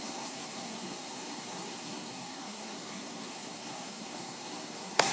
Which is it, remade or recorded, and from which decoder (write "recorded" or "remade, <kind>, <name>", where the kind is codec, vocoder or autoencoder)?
remade, codec, SNAC